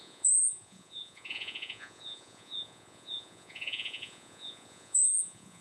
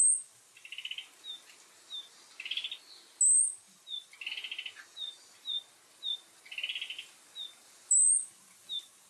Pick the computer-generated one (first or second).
first